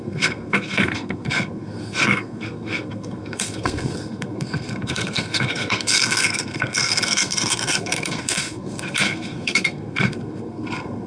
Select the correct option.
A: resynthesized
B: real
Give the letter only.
A